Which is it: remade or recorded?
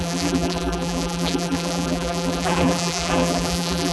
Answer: remade